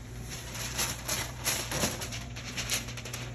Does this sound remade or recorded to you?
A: remade